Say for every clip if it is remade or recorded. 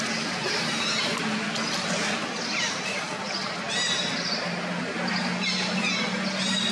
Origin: recorded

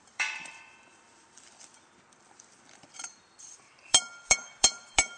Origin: remade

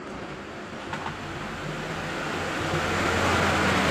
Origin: recorded